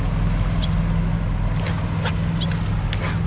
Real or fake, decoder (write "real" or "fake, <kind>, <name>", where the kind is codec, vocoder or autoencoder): real